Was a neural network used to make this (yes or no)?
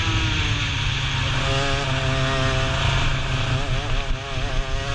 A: no